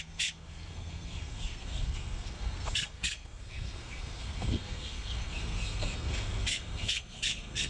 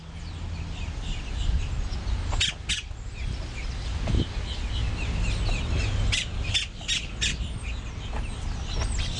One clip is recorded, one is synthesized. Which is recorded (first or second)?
second